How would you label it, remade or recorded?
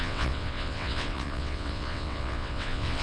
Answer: remade